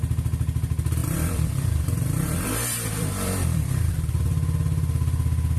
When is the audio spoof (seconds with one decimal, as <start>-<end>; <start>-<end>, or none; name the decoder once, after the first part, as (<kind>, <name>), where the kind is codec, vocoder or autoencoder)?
1.0-3.9 (vocoder, BigVGAN v2)